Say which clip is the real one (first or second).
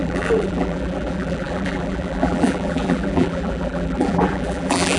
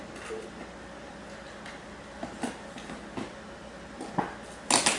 second